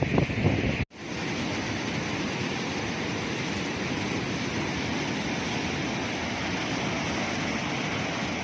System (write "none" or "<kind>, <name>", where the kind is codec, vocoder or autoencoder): none